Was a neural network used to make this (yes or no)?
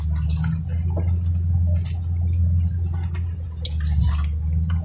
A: no